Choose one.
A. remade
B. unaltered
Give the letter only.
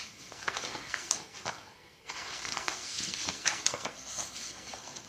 A